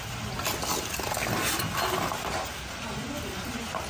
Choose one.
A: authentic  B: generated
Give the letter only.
A